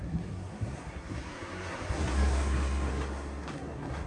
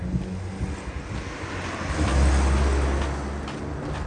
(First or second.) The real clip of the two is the second